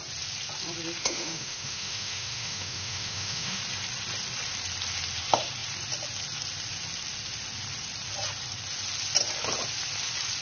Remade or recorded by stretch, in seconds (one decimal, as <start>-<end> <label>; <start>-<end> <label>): 0.0-1.0 recorded; 1.0-3.6 remade; 3.6-10.4 recorded